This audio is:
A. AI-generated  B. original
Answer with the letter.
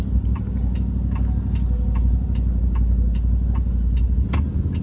B